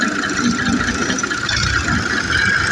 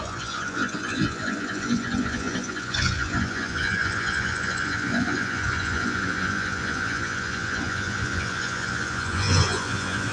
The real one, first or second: first